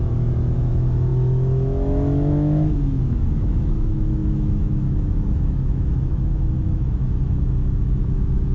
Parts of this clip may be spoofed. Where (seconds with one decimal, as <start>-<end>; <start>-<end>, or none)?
0.0-8.5